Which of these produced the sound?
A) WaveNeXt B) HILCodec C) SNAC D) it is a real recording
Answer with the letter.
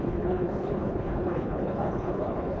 B